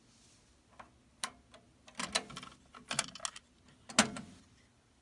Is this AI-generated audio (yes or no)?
no